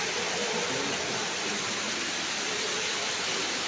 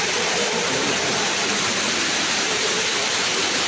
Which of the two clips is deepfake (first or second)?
second